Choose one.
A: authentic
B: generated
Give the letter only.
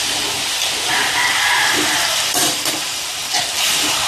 A